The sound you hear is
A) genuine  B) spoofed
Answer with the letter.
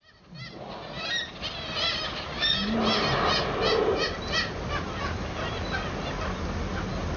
A